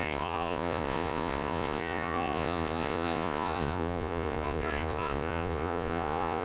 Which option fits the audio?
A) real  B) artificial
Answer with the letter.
B